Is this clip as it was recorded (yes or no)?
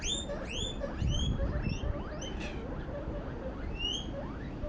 yes